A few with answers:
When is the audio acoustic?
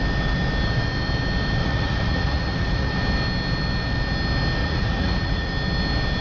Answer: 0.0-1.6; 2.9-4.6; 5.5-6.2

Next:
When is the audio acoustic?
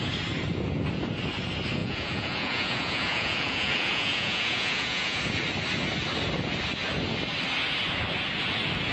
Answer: 0.0-1.8; 5.2-8.9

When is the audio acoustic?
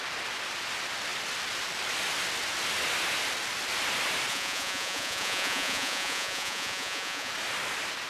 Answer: 0.0-4.3; 7.3-8.1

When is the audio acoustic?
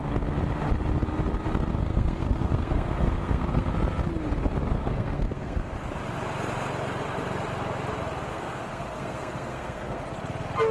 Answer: 0.0-1.8; 3.7-4.7; 5.7-8.3; 10.0-10.7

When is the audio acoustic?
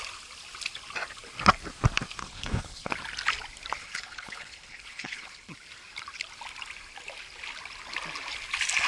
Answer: 0.0-2.2; 2.9-3.8; 5.5-8.9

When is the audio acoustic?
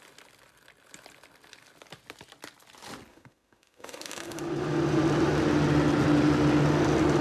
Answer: 0.0-3.1; 4.4-7.2